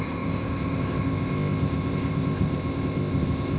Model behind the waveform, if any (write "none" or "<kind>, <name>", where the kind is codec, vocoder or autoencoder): codec, ZipCodec